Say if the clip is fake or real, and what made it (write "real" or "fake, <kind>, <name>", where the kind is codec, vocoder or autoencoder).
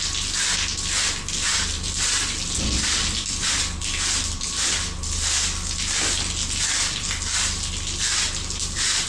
real